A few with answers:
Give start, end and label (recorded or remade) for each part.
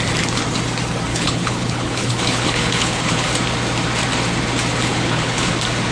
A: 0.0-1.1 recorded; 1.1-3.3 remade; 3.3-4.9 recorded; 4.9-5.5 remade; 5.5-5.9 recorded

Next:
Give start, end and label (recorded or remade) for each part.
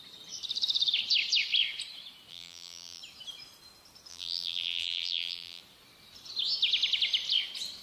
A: 0.0-2.3 recorded; 2.3-3.0 remade; 3.0-4.1 recorded; 4.1-5.6 remade; 5.6-7.8 recorded